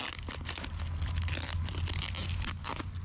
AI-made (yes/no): no